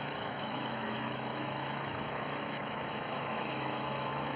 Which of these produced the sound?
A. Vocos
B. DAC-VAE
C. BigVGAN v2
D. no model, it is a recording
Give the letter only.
B